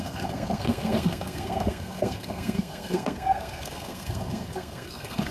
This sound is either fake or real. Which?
fake